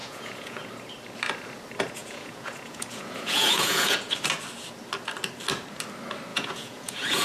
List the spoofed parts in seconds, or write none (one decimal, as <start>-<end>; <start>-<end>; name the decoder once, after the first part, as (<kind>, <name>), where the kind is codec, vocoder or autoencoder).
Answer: 0.0-0.7 (vocoder, Vocos); 2.0-4.1; 6.3-7.2